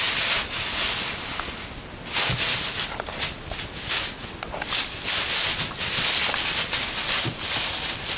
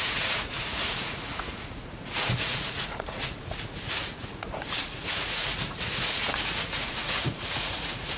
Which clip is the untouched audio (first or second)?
first